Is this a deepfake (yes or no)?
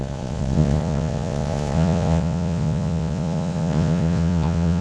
yes